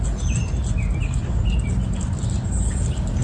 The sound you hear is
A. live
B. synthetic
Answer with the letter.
A